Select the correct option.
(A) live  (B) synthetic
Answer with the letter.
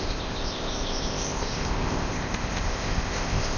B